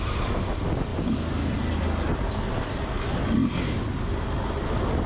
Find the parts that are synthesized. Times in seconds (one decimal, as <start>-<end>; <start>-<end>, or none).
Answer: none